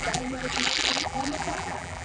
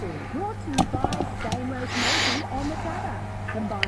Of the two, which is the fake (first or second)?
first